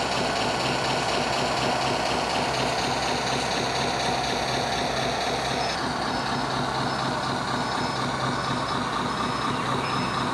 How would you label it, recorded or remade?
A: recorded